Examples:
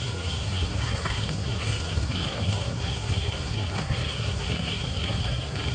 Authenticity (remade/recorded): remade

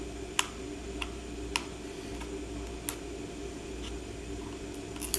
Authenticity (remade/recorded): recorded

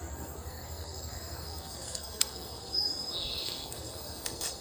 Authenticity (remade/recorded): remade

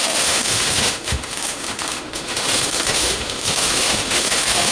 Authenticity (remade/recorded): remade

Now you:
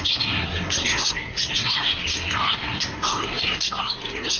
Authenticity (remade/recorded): remade